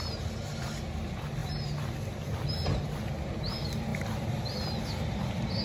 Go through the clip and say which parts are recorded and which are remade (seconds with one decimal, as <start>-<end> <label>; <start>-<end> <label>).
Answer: 0.0-5.6 recorded